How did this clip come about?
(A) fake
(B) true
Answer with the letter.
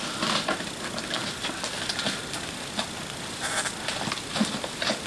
B